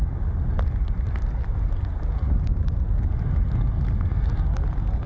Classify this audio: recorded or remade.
recorded